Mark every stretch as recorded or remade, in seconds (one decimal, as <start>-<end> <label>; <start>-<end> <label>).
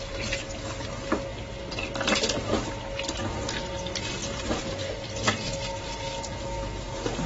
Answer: 0.0-4.2 recorded; 4.2-5.0 remade; 5.0-7.3 recorded